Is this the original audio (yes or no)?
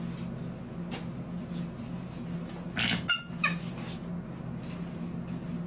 yes